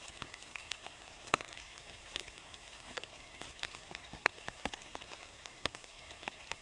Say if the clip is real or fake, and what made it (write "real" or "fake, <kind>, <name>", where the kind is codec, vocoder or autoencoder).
fake, codec, SNAC